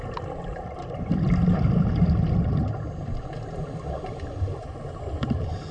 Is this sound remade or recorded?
recorded